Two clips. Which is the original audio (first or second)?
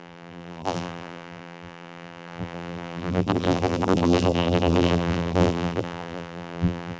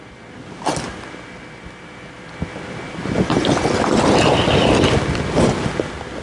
second